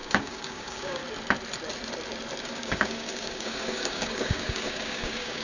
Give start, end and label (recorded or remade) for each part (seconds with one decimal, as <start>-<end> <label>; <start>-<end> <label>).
0.0-1.0 remade; 1.0-2.4 recorded; 2.4-5.4 remade